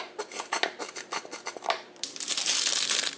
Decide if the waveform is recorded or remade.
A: remade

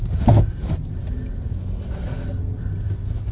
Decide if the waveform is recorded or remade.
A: recorded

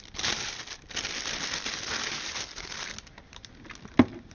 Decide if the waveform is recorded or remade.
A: recorded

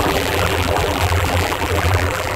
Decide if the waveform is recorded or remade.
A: remade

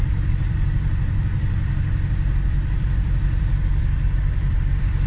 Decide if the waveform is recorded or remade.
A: remade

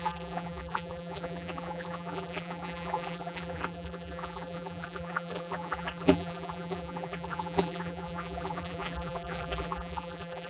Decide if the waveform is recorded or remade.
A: remade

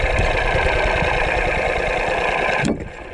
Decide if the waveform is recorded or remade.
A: recorded